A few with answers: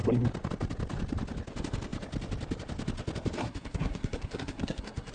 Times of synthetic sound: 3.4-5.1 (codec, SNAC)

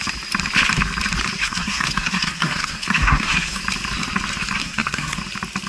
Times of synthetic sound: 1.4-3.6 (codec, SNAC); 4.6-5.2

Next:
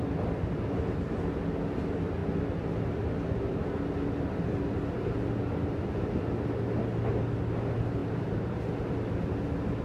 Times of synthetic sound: 8.0-8.6 (vocoder, BigVGAN v2)

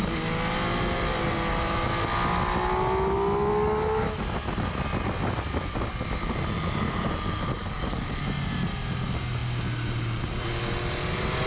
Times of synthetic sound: 3.5-4.2 (codec, DAC); 7.6-8.2

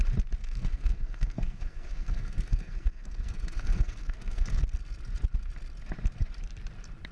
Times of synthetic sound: 0.4-4.6 (codec, SNAC)